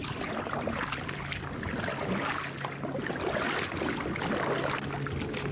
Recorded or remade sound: recorded